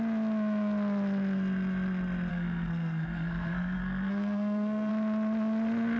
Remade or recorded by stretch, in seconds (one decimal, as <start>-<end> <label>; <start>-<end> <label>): 0.0-2.3 recorded; 2.3-4.9 remade; 4.9-6.0 recorded